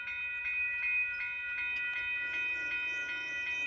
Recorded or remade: recorded